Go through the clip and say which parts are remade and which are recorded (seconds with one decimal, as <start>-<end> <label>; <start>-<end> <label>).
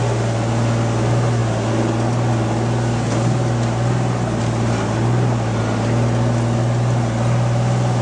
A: 0.0-8.0 recorded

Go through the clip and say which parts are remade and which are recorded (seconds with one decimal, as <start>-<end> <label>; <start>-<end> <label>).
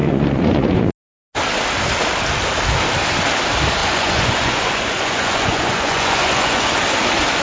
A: 0.0-0.9 remade; 0.9-3.8 recorded; 3.8-6.7 remade; 6.7-7.4 recorded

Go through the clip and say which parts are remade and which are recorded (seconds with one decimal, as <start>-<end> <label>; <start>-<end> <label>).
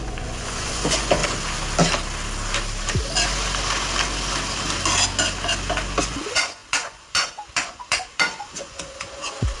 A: 0.0-1.2 remade; 1.2-6.0 recorded; 6.0-9.6 remade